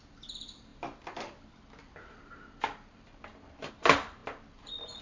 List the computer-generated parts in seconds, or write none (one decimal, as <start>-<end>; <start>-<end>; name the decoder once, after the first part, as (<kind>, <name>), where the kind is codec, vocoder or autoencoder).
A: none